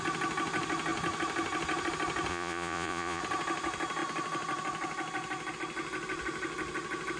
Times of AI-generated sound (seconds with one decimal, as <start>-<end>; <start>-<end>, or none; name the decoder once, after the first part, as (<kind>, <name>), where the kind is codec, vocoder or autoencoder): 2.3-3.2 (vocoder, Vocos)